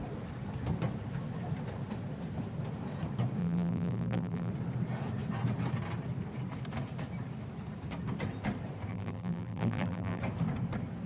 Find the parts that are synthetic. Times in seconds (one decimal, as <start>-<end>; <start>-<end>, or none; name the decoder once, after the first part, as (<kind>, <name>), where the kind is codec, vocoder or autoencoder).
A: 3.4-4.5 (vocoder, BigVGAN v2); 8.9-10.2

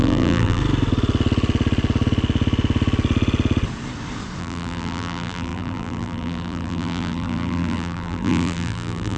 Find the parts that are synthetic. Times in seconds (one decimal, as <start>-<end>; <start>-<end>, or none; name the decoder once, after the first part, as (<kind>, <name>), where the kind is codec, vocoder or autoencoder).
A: 0.0-0.6 (vocoder, BigVGAN v2); 4.4-9.2

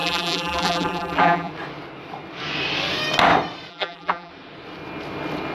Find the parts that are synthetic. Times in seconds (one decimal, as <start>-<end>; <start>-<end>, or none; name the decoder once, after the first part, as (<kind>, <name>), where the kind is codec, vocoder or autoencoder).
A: 0.0-1.5 (vocoder, BigVGAN v2); 3.7-4.3

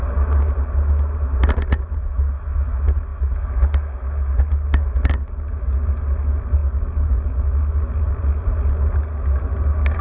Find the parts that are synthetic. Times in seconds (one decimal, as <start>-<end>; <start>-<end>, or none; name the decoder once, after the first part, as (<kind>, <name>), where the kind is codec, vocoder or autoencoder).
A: none

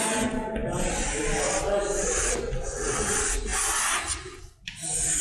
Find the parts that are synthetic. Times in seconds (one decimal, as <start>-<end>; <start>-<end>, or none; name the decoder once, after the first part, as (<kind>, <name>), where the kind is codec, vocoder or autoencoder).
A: none

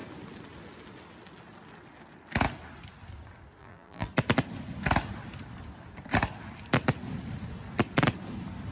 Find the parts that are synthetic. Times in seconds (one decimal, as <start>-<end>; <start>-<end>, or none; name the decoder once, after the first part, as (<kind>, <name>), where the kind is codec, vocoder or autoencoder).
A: 3.6-4.1 (vocoder, BigVGAN v2)